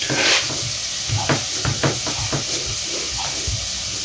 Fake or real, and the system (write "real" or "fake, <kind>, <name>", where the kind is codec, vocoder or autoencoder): real